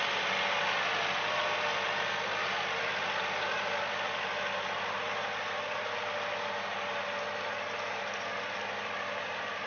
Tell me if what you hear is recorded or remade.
recorded